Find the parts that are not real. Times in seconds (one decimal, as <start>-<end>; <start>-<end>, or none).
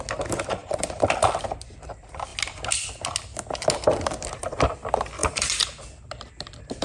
0.6-1.4; 5.2-5.8